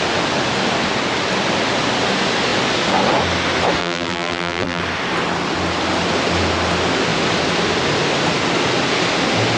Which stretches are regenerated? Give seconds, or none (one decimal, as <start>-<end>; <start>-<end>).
3.8-4.8